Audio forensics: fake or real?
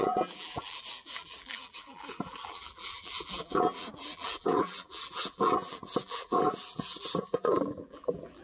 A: fake